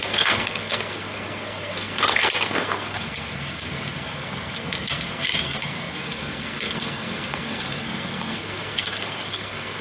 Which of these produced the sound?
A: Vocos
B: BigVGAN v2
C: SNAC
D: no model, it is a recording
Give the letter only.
C